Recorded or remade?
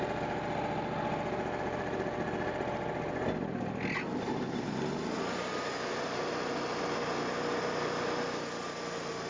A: recorded